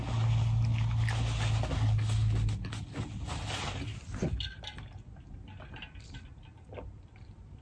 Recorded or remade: recorded